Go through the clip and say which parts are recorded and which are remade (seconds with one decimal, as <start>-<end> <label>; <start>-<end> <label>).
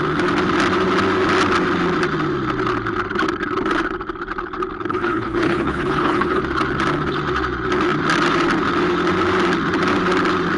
0.0-4.9 recorded; 4.9-6.4 remade; 6.4-10.6 recorded